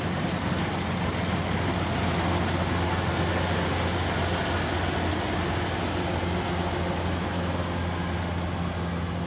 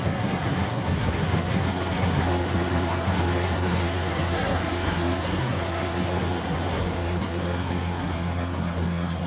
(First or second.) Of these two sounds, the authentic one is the first